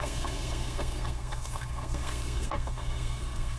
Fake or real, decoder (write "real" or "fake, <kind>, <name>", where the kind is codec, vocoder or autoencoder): fake, codec, SNAC